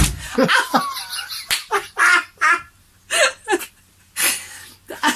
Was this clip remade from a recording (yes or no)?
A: no